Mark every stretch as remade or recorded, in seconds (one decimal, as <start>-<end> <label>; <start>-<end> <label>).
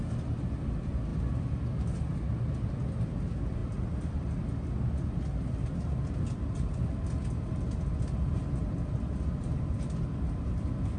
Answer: 0.0-11.0 recorded